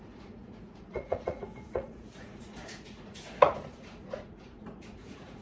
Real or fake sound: fake